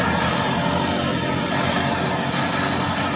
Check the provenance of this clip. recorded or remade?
recorded